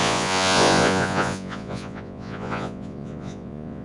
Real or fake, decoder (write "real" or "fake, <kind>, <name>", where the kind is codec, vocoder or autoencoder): fake, vocoder, Vocos